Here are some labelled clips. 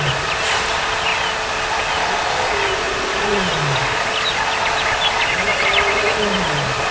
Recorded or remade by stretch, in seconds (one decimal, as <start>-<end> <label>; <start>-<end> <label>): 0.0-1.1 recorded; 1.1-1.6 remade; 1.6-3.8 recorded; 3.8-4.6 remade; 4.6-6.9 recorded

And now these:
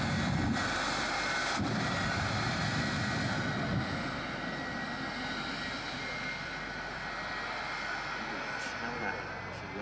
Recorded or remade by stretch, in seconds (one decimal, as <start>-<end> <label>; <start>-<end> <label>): 0.0-1.4 recorded; 1.4-2.8 remade; 2.8-3.7 recorded; 3.7-4.5 remade; 4.5-9.8 recorded

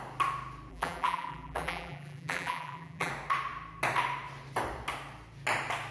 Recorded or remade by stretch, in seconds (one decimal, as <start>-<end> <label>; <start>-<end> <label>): 0.0-0.7 recorded; 0.7-3.1 remade; 3.1-5.9 recorded

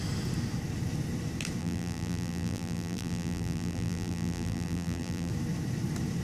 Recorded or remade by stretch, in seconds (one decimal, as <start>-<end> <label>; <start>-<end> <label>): 0.0-1.6 recorded; 1.6-5.3 remade; 5.3-6.2 recorded